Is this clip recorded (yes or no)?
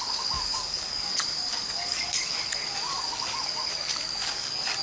no